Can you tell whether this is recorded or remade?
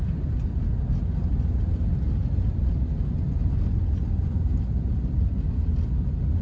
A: recorded